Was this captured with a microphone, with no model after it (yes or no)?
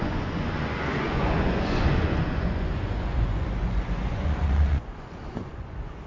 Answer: no